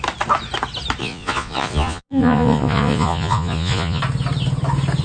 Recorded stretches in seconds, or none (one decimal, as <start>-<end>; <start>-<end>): 0.0-1.0; 4.0-5.0